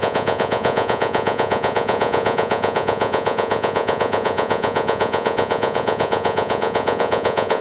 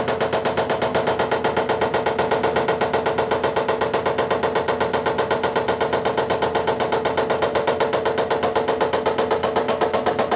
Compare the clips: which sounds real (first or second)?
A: second